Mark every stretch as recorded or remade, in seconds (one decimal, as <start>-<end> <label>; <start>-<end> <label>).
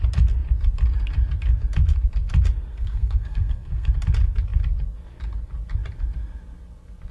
0.0-2.7 recorded; 2.7-3.9 remade; 3.9-7.1 recorded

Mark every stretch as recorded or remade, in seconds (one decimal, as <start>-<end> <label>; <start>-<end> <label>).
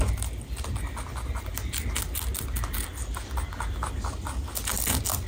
0.0-5.3 recorded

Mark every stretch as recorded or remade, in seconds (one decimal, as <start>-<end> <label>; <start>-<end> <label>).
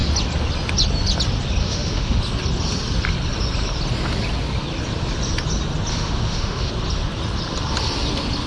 0.0-1.6 recorded; 1.6-2.2 remade; 2.2-5.9 recorded; 5.9-6.7 remade; 6.7-8.5 recorded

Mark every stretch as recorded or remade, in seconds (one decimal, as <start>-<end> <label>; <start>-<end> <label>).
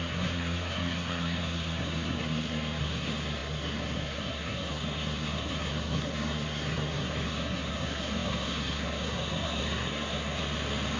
0.0-10.4 remade; 10.4-11.0 recorded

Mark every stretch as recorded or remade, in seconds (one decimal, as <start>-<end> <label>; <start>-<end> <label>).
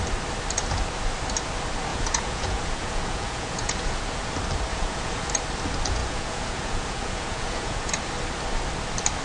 0.0-1.9 recorded; 1.9-4.3 remade; 4.3-4.7 recorded; 4.7-5.3 remade; 5.3-6.0 recorded; 6.0-7.9 remade; 7.9-9.2 recorded